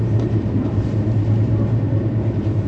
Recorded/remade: remade